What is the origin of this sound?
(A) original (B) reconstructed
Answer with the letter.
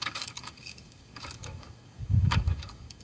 B